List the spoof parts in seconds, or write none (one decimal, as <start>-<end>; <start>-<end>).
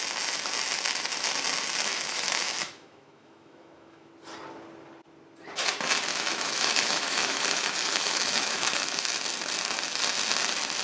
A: 1.9-4.1; 6.1-9.1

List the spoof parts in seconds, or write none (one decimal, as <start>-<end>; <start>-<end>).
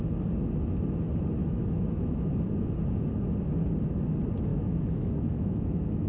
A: 1.4-2.3; 4.5-6.1